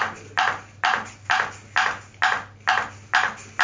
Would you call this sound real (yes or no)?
yes